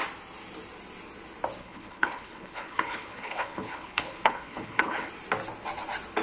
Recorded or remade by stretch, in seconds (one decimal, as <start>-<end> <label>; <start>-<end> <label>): 0.0-1.6 recorded; 1.6-5.1 remade; 5.1-6.2 recorded